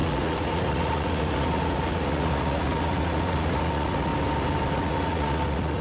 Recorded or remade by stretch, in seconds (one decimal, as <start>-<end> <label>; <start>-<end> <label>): 0.0-4.1 remade; 4.1-4.8 recorded; 4.8-5.8 remade